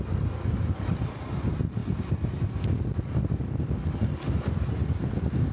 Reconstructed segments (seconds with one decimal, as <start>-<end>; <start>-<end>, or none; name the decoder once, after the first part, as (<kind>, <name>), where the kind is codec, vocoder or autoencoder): none